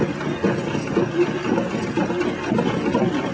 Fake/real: real